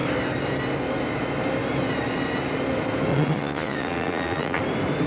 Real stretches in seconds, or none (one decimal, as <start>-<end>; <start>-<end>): 0.0-3.1; 4.6-5.1